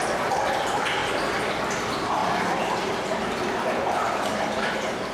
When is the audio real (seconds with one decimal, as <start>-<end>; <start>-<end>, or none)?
none